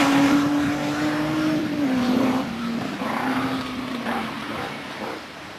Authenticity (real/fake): fake